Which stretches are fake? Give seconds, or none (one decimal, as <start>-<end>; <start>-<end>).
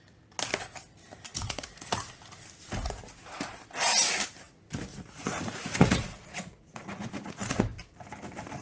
1.3-2.1; 4.9-7.6